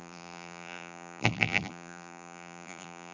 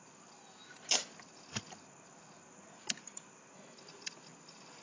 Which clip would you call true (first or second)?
second